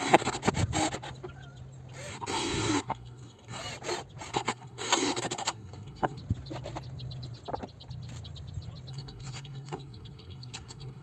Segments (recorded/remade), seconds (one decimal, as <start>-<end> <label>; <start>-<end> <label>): 0.0-0.4 remade; 0.4-2.1 recorded; 2.1-3.6 remade; 3.6-4.3 recorded; 4.3-6.2 remade; 6.2-8.9 recorded; 8.9-11.0 remade